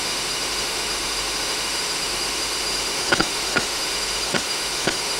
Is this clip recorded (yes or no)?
no